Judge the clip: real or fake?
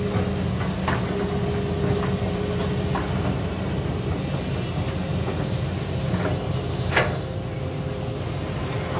real